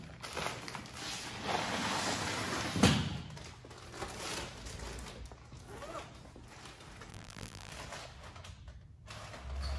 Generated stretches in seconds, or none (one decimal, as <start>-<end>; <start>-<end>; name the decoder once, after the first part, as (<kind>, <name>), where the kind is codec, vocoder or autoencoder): 7.1-7.7 (vocoder, BigVGAN v2)